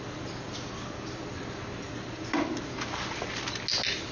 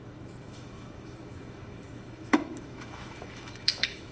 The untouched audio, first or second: first